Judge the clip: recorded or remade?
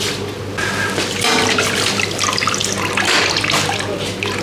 recorded